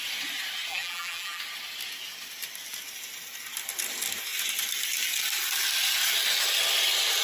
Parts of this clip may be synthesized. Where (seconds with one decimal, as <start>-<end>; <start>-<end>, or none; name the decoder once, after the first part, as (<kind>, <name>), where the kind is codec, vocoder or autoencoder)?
0.7-1.4 (vocoder, BigVGAN v2)

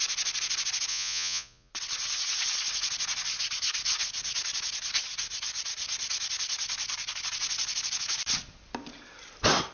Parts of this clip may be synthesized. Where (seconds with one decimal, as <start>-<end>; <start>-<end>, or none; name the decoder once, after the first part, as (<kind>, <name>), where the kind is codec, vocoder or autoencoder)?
0.9-1.7 (vocoder, Vocos)

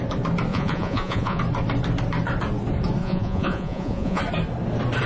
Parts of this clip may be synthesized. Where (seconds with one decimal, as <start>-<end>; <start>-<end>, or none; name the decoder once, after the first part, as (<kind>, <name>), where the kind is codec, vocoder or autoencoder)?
0.5-1.4 (vocoder, Vocos); 3.0-4.2

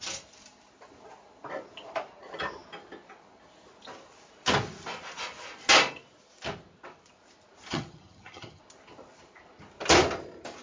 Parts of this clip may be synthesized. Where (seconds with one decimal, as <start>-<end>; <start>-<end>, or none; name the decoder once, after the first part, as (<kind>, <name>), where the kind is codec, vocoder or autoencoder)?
7.7-8.6 (vocoder, HiFi-GAN)

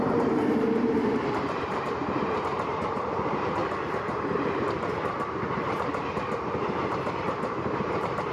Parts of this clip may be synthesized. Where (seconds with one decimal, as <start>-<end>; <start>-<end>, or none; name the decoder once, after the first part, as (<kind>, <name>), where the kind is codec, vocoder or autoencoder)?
0.0-3.6 (vocoder, BigVGAN v2); 7.2-8.3

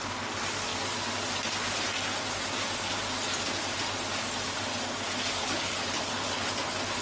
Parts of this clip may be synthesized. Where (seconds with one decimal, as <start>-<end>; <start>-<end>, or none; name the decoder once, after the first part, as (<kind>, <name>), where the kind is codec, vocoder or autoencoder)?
5.4-6.5 (codec, HILCodec)

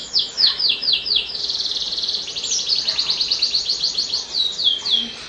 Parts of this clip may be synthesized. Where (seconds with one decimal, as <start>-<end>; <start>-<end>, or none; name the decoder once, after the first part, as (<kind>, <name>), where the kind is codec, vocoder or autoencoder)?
0.0-1.4 (autoencoder, DAC-VAE)